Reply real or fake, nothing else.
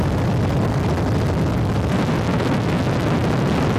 real